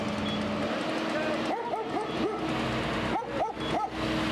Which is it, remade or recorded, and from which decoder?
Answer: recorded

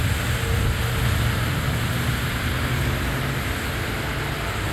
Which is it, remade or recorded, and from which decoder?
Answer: recorded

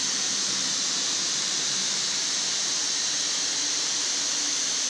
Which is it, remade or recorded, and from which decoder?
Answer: remade, vocoder, BigVGAN v2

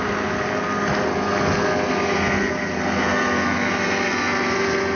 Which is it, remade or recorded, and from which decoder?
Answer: recorded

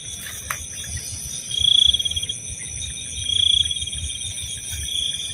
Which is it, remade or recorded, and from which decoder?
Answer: recorded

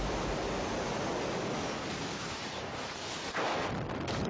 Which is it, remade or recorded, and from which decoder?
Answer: recorded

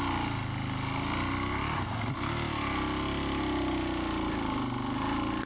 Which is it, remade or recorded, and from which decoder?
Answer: recorded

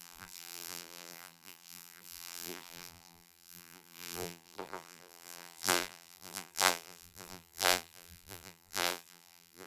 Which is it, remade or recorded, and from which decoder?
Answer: remade, vocoder, BigVGAN v2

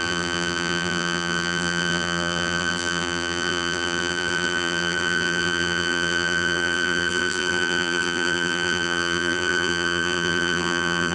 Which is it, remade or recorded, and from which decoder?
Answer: remade, vocoder, BigVGAN v2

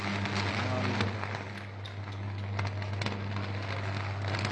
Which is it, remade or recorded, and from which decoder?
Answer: recorded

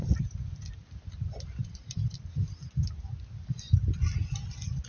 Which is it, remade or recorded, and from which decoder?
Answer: recorded